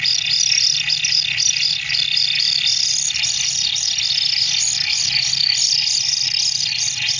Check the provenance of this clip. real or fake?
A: real